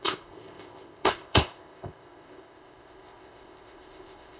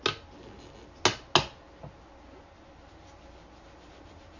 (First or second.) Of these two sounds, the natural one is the second